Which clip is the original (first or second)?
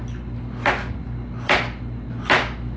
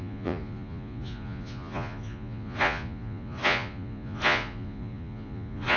first